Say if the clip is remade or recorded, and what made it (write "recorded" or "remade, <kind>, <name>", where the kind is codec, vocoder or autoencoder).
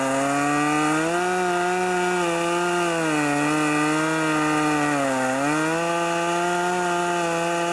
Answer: recorded